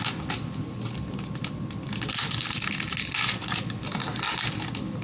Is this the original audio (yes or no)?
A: yes